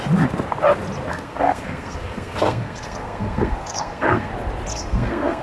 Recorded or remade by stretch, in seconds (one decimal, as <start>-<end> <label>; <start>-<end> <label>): 0.0-1.1 recorded; 1.1-4.3 remade; 4.3-4.7 recorded; 4.7-5.4 remade